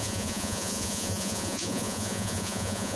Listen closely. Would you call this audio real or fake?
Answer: fake